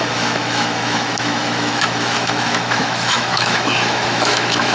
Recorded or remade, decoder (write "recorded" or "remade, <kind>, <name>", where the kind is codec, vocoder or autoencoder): remade, autoencoder, DAC-VAE